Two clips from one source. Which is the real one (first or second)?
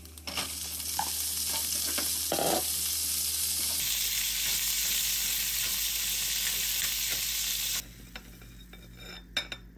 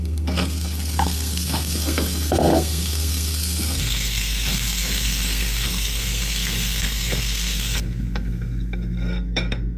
first